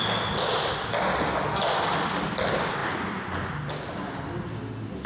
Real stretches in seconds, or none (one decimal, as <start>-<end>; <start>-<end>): 0.0-5.1